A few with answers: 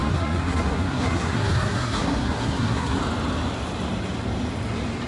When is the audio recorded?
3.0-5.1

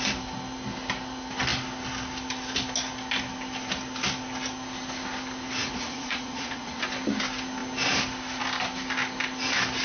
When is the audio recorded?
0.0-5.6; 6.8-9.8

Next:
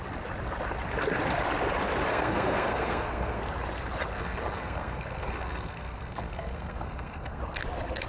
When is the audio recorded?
0.0-2.1; 3.4-4.1; 7.4-8.1

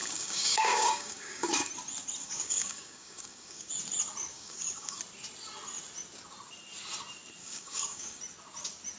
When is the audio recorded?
1.7-2.2; 3.7-4.3; 5.0-7.4; 8.2-9.0

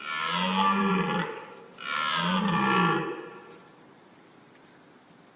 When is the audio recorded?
0.0-5.4